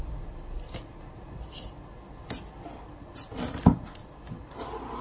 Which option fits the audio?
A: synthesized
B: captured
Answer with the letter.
B